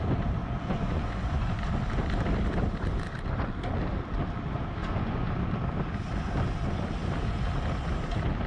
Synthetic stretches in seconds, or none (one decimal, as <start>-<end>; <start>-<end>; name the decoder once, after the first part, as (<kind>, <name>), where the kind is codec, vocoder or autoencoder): 0.4-1.7 (vocoder, Vocos); 4.8-5.3